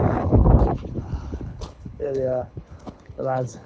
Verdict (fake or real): fake